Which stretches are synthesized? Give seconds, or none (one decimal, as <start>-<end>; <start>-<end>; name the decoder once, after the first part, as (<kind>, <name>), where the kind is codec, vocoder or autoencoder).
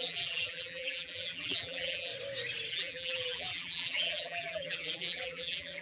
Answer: 0.0-2.1 (vocoder, BigVGAN v2); 2.7-5.8